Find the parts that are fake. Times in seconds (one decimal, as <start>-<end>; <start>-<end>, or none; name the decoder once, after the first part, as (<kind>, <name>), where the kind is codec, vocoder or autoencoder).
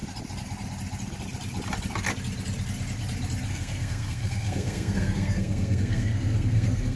3.5-7.0 (codec, SNAC)